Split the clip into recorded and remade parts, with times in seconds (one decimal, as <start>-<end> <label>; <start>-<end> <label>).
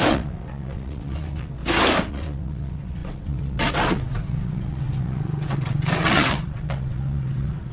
0.0-1.6 remade; 1.6-2.1 recorded; 2.1-7.7 remade